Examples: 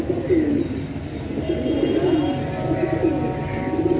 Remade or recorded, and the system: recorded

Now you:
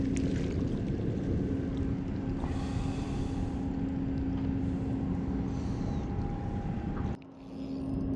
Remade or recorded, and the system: recorded